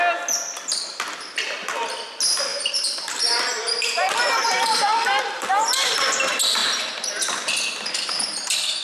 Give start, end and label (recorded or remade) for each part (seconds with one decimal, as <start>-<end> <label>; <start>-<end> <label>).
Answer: 0.0-2.5 recorded; 2.5-5.6 remade; 5.6-8.8 recorded